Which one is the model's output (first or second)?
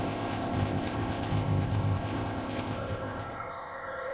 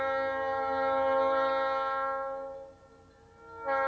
first